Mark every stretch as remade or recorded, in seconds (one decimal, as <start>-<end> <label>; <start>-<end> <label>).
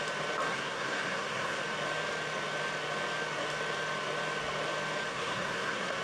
0.0-0.5 recorded; 0.5-1.6 remade; 1.6-5.1 recorded; 5.1-6.0 remade